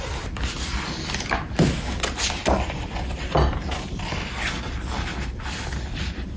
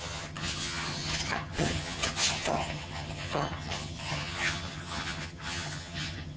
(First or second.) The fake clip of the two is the second